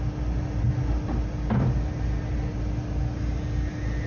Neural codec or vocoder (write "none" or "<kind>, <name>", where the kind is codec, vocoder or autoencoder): none